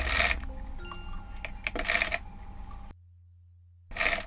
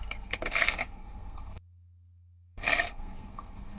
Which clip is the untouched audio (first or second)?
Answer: first